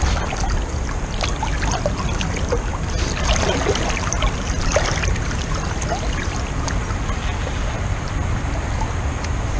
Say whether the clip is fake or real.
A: real